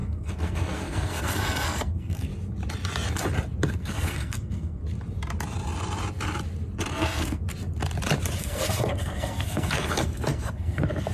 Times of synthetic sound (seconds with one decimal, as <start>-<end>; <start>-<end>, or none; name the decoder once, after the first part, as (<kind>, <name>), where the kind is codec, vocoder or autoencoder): 0.0-2.3 (codec, SNAC); 3.7-4.8; 6.9-7.4; 8.4-11.1